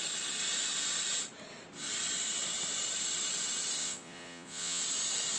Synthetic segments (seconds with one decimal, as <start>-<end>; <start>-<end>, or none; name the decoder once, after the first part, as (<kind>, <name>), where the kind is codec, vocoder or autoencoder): 3.8-4.8 (vocoder, Vocos)